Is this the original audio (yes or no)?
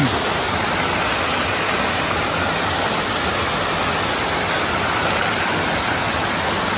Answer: yes